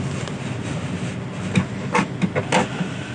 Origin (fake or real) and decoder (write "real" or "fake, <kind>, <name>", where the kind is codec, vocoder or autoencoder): real